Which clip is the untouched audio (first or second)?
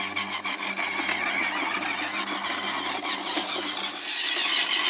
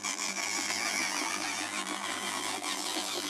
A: first